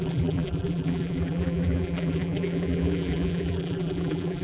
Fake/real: fake